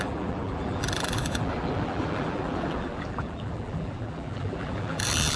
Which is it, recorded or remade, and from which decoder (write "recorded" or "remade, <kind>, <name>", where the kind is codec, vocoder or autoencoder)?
remade, vocoder, BigVGAN v2